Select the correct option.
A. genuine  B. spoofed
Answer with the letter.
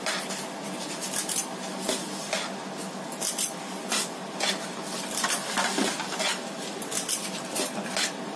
A